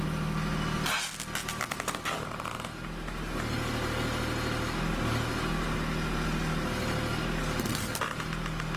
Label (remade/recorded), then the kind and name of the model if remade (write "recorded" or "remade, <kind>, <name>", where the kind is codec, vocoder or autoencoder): recorded